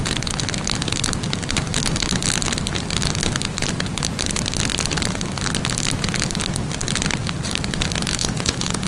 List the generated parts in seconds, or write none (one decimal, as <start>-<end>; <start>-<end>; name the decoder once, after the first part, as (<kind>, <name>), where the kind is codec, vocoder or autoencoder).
8.2-8.9 (vocoder, Vocos)